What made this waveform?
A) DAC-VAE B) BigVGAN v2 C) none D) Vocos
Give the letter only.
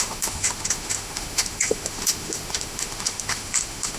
A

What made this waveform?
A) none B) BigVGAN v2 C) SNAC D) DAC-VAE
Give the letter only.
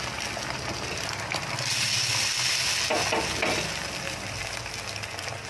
A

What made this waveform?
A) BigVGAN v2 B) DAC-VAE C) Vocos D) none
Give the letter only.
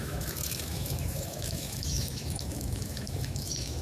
B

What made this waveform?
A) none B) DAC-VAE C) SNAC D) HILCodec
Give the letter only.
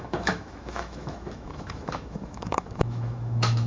B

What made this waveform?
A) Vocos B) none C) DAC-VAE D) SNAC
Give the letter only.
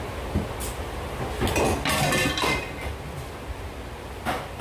B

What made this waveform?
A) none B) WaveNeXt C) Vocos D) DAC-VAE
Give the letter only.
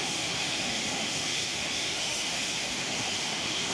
D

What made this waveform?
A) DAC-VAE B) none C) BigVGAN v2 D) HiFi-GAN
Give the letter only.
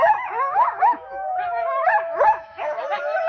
A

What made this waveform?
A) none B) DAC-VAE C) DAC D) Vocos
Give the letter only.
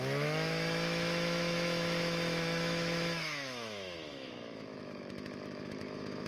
B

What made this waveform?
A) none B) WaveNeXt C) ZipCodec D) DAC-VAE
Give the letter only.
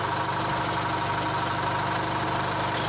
A